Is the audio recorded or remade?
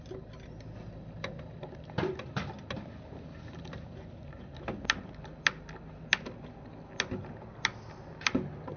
recorded